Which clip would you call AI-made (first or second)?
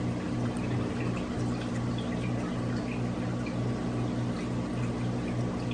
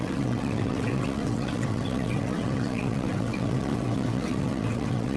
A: second